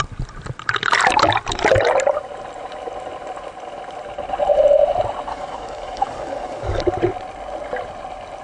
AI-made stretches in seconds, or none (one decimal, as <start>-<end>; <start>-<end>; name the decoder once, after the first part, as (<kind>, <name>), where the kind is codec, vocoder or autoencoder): 5.3-6.8 (codec, DAC)